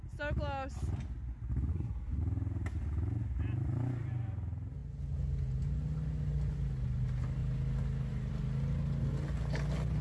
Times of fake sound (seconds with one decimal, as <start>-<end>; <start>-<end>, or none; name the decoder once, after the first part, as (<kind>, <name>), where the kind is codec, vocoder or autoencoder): 1.7-2.2 (codec, SNAC)